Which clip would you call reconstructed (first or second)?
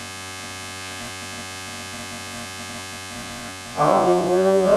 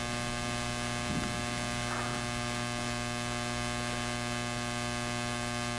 first